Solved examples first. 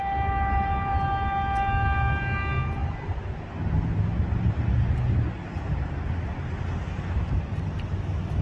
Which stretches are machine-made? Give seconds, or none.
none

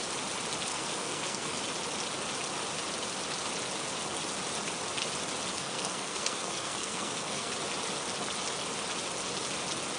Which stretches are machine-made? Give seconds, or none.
0.7-1.6; 5.5-7.5